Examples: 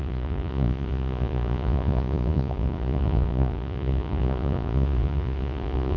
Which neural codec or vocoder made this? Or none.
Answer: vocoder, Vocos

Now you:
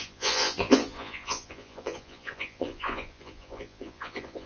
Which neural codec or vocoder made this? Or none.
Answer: vocoder, Vocos